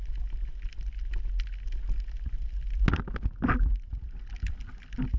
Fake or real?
real